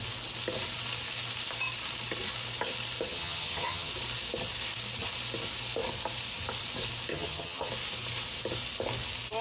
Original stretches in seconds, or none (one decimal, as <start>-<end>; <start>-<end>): 0.0-3.1; 3.9-7.1; 7.7-9.4